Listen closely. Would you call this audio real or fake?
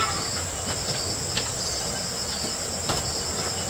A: real